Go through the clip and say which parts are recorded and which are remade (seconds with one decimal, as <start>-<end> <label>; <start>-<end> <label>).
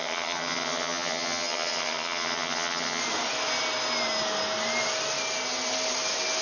0.0-3.0 remade; 3.0-6.4 recorded